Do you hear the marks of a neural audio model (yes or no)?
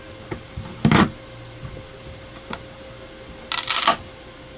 no